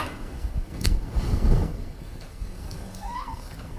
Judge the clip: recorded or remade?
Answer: remade